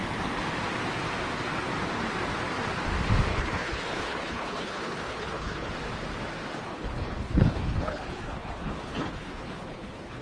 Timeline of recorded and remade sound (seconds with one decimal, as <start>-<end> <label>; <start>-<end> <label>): 0.0-3.3 recorded; 3.3-5.7 remade; 5.7-6.6 recorded; 6.6-10.2 remade